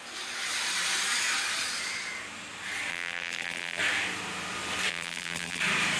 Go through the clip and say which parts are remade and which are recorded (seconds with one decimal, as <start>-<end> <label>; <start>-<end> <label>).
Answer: 0.0-2.9 recorded; 2.9-3.8 remade; 3.8-4.9 recorded; 4.9-5.6 remade; 5.6-6.0 recorded